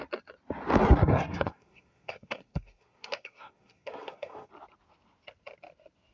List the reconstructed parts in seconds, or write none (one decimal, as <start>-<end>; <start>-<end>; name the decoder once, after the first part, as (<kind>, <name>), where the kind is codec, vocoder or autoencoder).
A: 0.8-4.5 (codec, SNAC)